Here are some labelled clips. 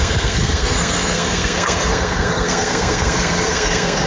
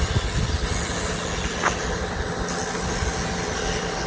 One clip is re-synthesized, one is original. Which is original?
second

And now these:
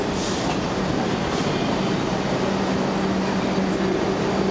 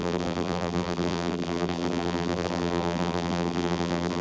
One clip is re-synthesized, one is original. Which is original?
first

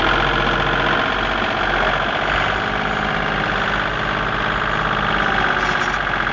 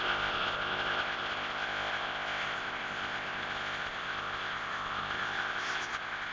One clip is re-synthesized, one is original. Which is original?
first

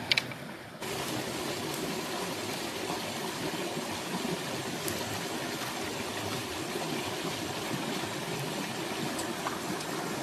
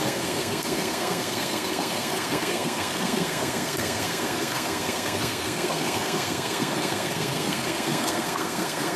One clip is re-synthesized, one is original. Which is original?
first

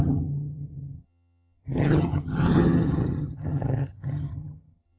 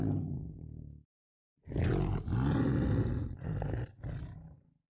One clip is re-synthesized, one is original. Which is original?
second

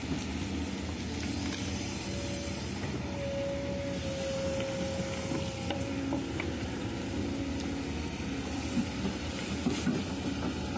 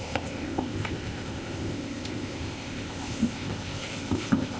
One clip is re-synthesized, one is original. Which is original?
first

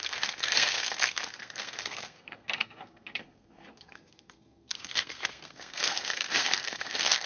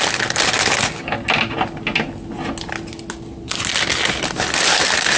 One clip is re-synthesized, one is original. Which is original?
second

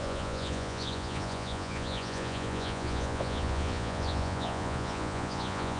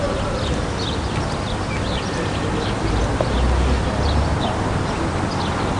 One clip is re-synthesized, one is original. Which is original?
second